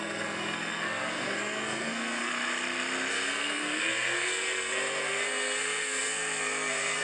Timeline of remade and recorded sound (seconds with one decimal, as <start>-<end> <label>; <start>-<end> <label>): 0.0-2.3 remade; 2.3-3.1 recorded; 3.1-7.0 remade